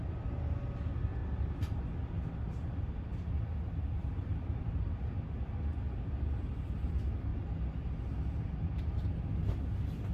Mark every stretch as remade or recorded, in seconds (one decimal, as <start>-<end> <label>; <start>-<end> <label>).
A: 0.0-10.1 recorded